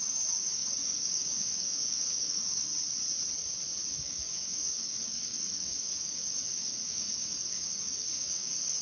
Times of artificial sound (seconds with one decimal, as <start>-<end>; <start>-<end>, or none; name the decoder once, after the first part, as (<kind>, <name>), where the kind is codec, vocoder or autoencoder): 0.0-2.7 (codec, DAC); 3.9-8.8